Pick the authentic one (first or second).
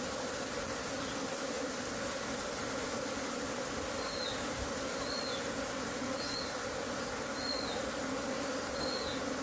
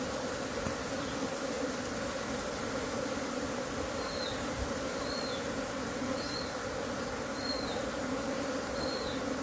first